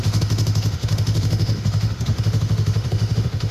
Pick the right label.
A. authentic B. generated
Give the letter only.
B